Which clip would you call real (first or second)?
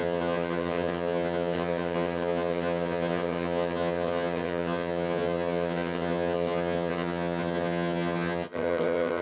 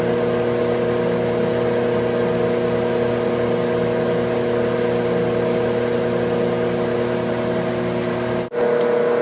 second